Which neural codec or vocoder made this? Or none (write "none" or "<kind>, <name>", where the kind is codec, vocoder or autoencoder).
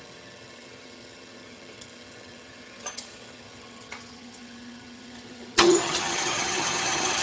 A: vocoder, HiFi-GAN